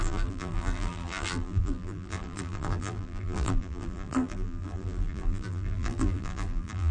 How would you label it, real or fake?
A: fake